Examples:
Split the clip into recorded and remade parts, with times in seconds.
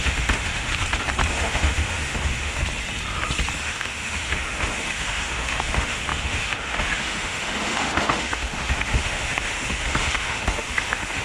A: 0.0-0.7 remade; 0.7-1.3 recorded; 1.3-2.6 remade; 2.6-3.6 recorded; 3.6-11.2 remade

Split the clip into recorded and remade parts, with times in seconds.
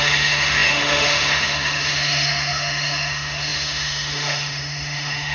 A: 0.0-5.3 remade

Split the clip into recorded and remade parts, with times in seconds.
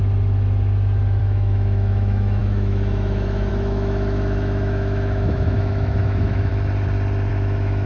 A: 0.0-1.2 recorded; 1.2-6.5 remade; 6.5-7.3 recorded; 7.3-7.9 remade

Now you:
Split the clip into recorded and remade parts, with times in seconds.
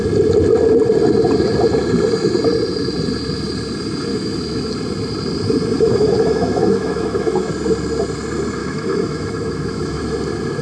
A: 0.0-4.1 recorded; 4.1-4.7 remade; 4.7-5.7 recorded; 5.7-7.5 remade; 7.5-8.6 recorded; 8.6-10.0 remade; 10.0-10.6 recorded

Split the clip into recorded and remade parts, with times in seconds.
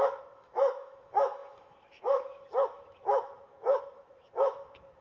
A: 0.0-5.0 remade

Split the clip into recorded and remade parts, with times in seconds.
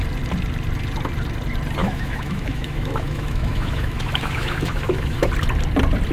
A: 0.0-1.8 recorded; 1.8-5.3 remade; 5.3-6.1 recorded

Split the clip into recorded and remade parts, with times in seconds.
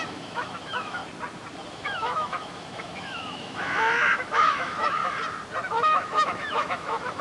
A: 0.0-1.0 remade; 1.0-1.7 recorded; 1.7-5.0 remade; 5.0-5.7 recorded; 5.7-7.2 remade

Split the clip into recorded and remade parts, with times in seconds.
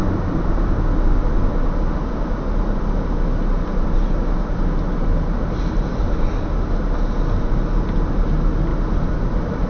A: 0.0-9.7 recorded